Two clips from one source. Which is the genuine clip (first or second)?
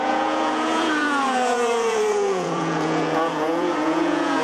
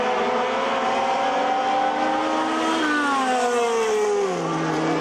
second